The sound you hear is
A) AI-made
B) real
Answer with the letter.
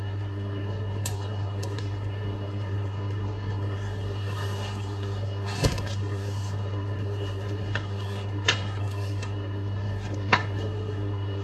A